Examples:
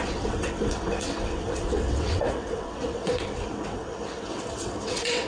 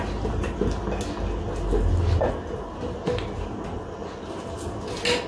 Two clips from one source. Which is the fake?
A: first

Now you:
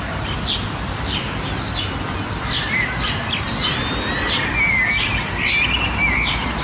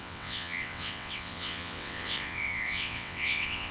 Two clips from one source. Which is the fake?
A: second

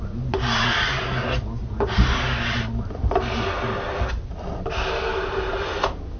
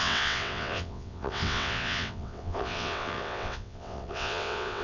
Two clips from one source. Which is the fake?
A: second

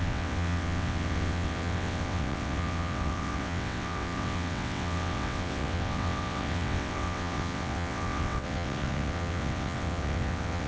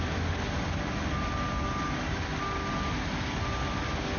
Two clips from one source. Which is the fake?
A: first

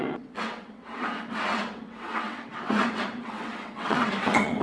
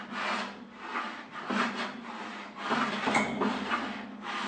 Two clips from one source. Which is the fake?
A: first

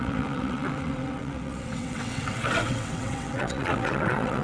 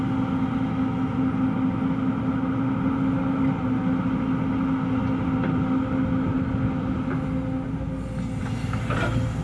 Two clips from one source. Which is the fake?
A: first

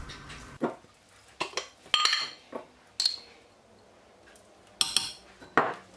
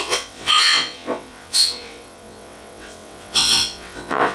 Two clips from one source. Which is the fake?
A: second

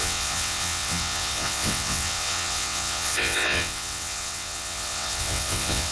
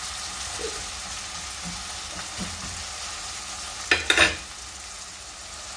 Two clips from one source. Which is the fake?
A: first